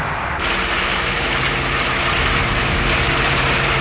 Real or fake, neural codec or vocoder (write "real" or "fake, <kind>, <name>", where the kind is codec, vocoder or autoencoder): fake, vocoder, BigVGAN v2